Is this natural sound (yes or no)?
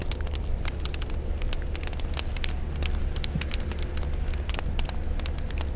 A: yes